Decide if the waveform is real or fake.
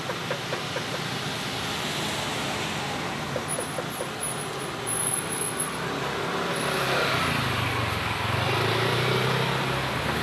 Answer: real